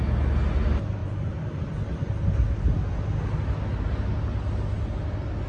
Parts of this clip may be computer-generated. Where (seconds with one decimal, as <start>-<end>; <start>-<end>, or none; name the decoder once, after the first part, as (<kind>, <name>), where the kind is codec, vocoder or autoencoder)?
1.0-2.3 (vocoder, BigVGAN v2)